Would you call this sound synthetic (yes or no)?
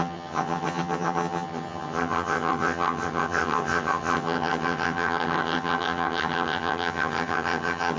yes